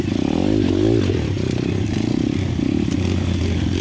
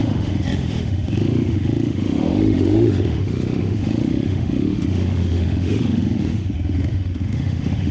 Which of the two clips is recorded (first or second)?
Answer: first